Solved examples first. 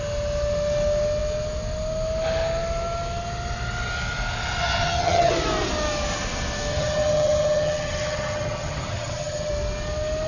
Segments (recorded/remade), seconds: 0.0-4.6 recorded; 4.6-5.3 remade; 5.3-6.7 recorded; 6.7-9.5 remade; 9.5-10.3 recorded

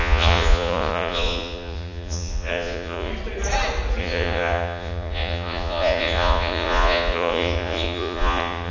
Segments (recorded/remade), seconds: 0.0-3.1 remade; 3.1-4.0 recorded; 4.0-8.7 remade

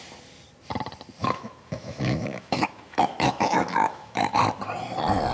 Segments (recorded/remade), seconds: 0.0-1.2 recorded; 1.2-4.4 remade; 4.4-5.3 recorded

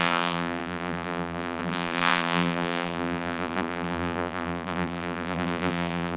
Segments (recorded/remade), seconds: 0.0-6.2 remade

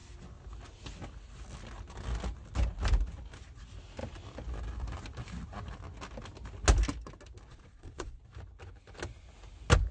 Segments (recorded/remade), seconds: 0.0-7.5 recorded; 7.5-8.2 remade; 8.2-9.9 recorded

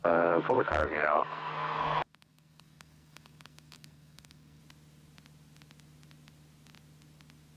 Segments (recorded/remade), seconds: 0.0-4.6 remade; 4.6-7.6 recorded

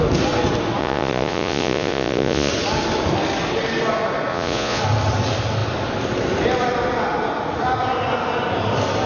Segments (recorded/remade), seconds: 0.0-0.8 recorded; 0.8-2.5 remade; 2.5-4.3 recorded; 4.3-4.8 remade; 4.8-9.1 recorded

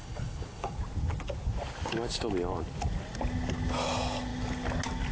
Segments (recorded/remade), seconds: 0.0-0.8 remade; 0.8-5.1 recorded